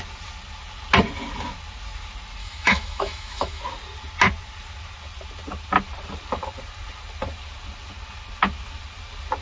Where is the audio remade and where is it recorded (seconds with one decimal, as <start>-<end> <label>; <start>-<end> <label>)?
0.0-2.4 recorded; 2.4-3.6 remade; 3.6-9.4 recorded